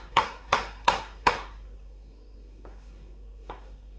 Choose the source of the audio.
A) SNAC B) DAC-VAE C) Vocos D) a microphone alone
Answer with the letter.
A